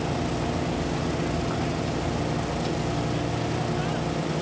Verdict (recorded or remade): recorded